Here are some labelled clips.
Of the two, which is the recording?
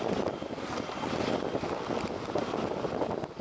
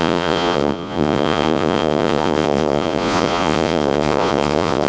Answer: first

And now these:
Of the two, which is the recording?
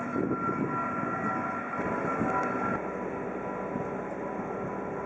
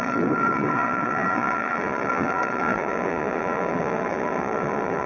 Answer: first